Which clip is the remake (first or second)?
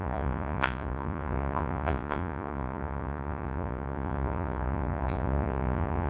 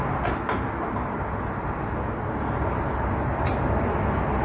first